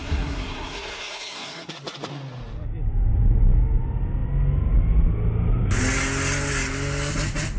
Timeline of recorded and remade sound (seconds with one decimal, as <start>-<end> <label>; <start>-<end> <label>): 0.0-1.7 remade; 1.7-7.6 recorded